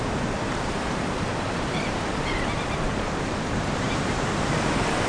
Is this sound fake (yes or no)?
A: yes